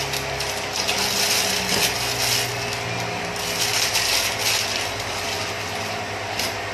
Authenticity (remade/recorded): recorded